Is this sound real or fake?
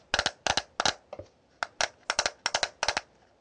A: real